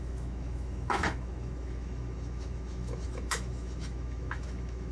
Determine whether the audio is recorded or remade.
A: remade